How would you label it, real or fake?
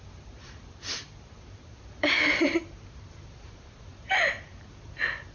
fake